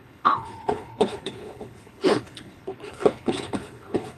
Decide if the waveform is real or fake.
fake